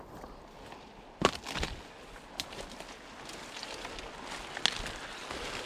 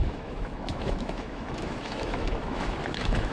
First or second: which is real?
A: first